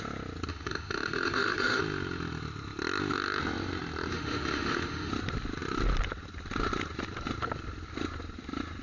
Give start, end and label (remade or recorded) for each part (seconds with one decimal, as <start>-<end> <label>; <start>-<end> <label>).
0.0-0.5 recorded; 0.5-1.8 remade; 1.8-4.1 recorded; 4.1-5.1 remade; 5.1-8.8 recorded